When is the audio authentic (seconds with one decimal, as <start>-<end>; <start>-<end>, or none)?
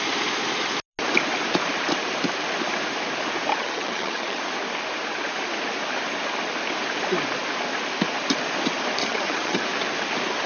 0.0-3.5; 4.4-9.0; 9.6-10.5